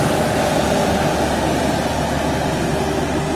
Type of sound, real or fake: real